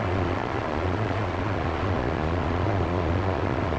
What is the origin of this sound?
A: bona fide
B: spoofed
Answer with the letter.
B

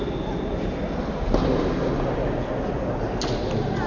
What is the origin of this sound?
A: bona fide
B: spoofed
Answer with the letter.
A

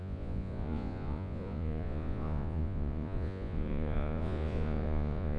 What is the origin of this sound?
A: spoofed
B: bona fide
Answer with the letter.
A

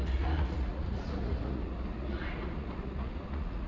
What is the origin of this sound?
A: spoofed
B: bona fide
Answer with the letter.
A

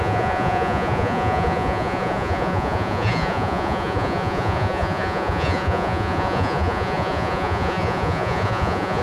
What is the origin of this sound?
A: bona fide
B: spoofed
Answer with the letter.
B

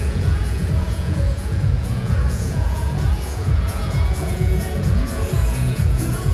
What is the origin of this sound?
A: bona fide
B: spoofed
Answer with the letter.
B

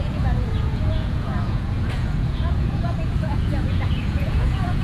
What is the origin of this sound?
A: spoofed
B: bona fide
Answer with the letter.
A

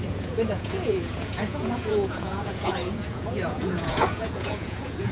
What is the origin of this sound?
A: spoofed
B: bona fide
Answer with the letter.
A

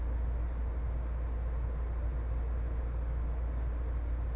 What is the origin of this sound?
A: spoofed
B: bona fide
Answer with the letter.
B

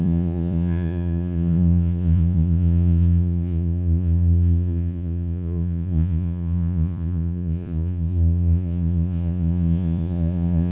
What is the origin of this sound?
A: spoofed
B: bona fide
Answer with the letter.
A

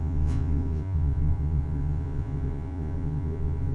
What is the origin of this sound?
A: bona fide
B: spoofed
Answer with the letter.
B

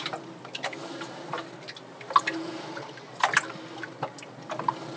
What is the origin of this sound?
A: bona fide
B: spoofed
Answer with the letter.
A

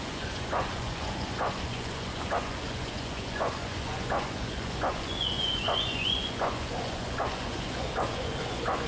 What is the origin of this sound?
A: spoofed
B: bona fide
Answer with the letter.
A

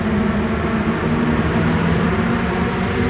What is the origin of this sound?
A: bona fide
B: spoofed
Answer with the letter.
A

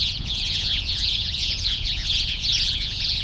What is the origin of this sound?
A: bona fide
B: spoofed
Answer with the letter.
B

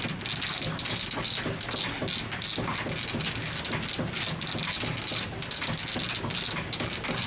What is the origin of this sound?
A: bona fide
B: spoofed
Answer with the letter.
A